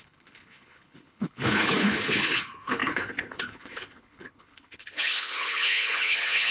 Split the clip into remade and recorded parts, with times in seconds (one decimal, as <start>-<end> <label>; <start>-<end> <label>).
0.0-6.5 remade